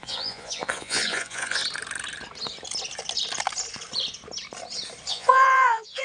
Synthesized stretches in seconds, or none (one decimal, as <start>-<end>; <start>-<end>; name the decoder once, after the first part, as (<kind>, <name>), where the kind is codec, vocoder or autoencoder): 0.0-1.6 (vocoder, Vocos); 5.1-6.0